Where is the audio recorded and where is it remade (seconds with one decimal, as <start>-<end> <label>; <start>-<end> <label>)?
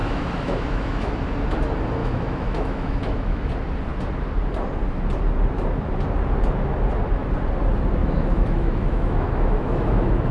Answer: 0.0-1.1 remade; 1.1-2.0 recorded; 2.0-3.5 remade; 3.5-8.0 recorded; 8.0-10.3 remade